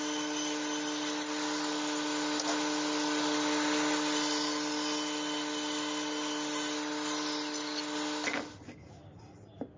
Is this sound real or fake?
real